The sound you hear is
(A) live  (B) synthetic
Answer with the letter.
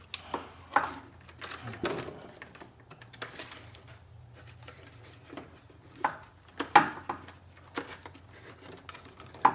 A